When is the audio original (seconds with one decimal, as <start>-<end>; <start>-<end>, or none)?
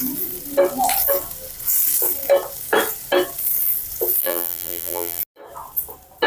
0.0-4.2; 5.2-6.3